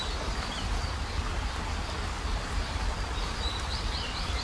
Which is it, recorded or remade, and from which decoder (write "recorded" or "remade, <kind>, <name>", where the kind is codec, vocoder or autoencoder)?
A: remade, vocoder, BigVGAN v2